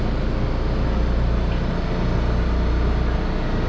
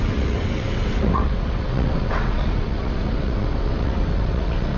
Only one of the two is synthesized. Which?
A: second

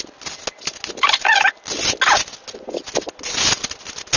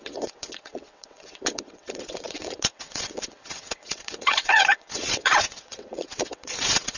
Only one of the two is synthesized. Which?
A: second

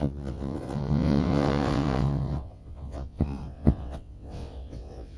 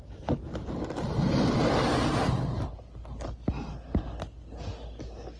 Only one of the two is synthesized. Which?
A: first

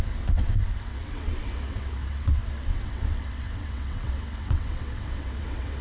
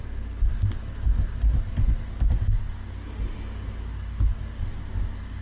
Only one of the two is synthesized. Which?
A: first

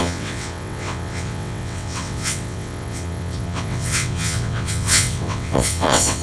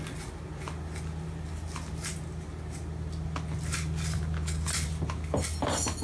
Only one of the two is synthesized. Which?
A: first